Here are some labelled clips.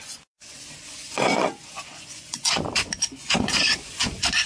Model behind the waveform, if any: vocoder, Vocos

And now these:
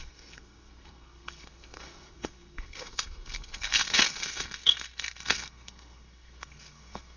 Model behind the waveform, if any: codec, SNAC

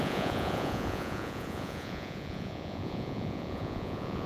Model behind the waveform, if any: vocoder, Vocos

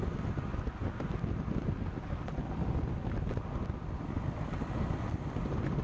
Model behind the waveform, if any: none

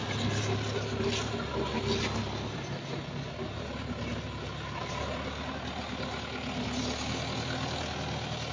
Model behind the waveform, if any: none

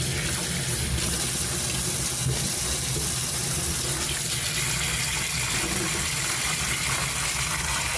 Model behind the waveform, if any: none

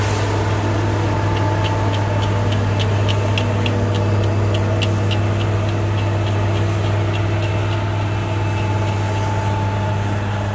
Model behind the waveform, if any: none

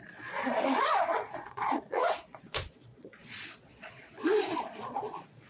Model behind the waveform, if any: vocoder, Vocos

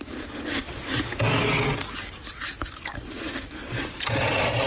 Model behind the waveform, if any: none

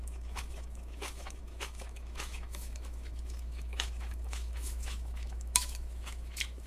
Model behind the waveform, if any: autoencoder, DAC-VAE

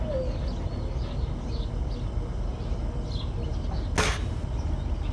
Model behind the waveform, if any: none